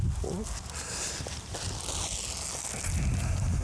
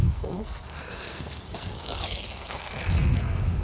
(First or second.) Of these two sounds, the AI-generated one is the second